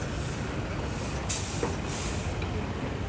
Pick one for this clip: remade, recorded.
recorded